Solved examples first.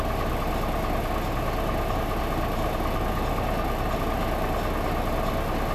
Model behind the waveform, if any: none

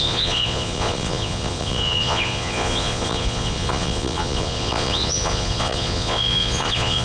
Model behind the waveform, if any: vocoder, Vocos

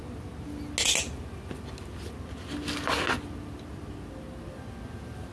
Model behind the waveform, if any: none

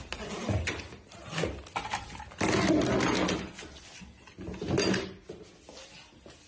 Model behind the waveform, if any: none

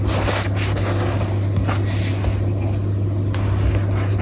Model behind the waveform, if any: none